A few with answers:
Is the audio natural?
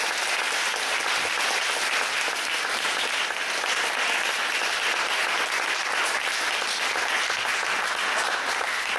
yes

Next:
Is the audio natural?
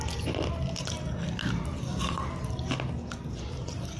yes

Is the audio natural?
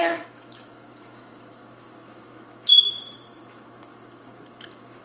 no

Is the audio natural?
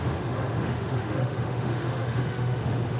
no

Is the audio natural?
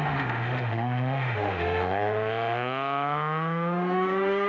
no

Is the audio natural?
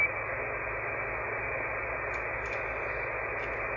yes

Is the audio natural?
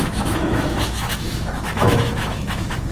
no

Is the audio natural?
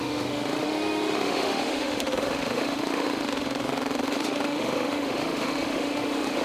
no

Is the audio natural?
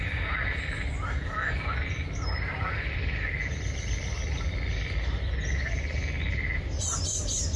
yes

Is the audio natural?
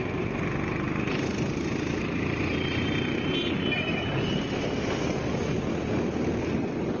yes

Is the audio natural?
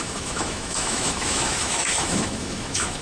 no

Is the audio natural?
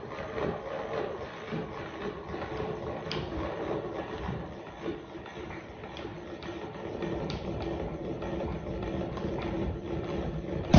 yes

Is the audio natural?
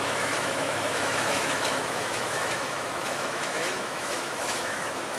no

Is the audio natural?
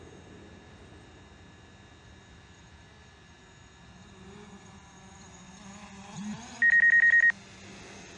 yes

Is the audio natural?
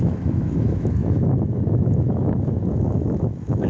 no